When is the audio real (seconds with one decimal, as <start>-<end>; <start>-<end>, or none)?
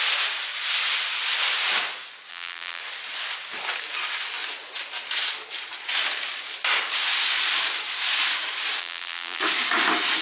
0.0-2.3; 2.8-8.8; 9.4-10.2